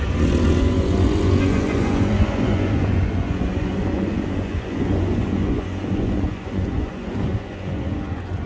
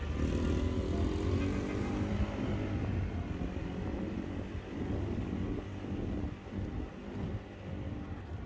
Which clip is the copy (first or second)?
first